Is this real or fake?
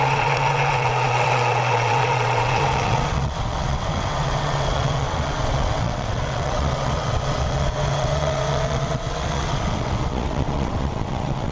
fake